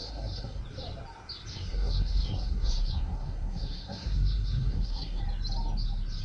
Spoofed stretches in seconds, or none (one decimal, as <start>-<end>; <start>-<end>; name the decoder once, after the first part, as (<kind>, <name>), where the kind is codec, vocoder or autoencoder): 0.0-0.6 (codec, SNAC); 1.5-5.2